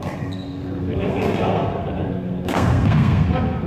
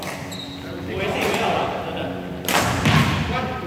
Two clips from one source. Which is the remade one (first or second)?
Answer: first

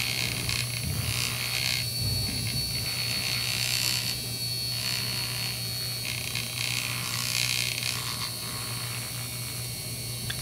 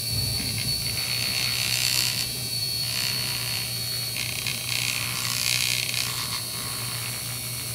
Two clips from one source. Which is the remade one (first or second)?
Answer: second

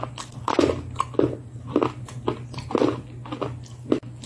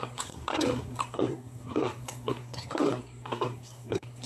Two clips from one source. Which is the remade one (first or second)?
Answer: second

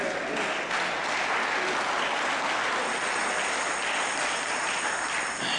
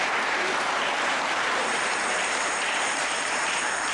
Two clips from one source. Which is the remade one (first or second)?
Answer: second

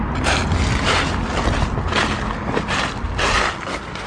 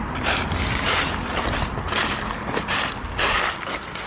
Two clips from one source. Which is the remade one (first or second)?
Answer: second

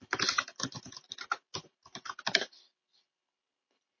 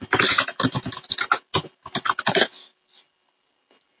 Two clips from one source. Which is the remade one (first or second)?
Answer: first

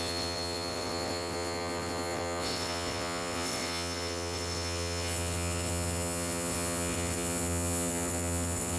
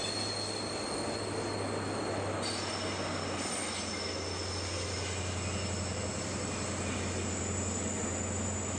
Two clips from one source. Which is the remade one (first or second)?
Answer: first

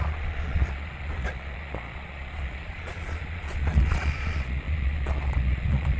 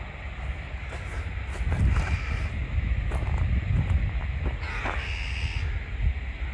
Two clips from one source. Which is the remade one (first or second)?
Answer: first